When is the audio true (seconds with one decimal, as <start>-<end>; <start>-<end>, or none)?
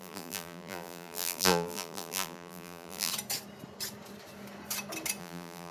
3.1-5.2